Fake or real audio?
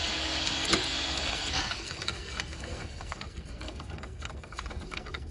fake